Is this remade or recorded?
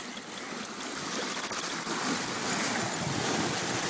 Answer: recorded